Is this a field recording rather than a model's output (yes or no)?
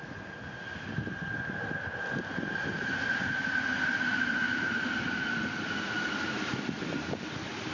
yes